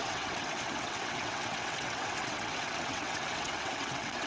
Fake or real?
fake